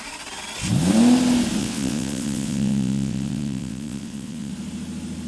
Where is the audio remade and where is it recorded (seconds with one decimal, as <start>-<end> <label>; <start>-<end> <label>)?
0.0-1.6 recorded; 1.6-4.5 remade; 4.5-5.3 recorded